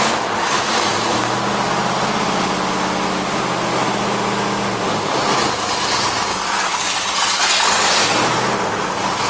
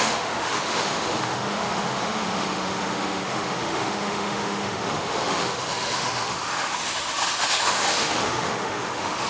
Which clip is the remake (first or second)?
second